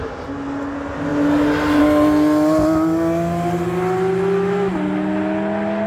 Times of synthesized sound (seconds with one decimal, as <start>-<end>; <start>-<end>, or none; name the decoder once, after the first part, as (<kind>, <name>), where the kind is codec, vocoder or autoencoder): none